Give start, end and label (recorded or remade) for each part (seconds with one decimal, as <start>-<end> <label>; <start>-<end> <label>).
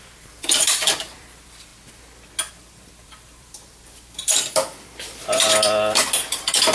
0.0-1.7 remade; 1.7-2.5 recorded; 2.5-6.7 remade